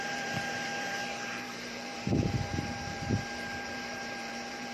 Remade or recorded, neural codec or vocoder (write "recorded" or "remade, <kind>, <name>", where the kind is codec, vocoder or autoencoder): remade, vocoder, BigVGAN v2